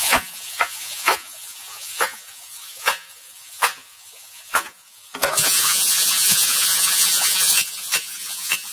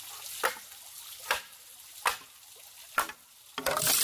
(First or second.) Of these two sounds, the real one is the second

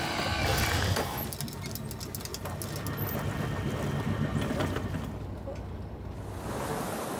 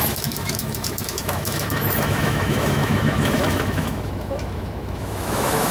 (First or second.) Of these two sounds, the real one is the first